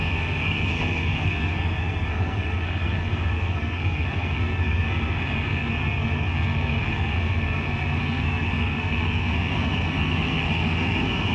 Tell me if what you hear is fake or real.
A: fake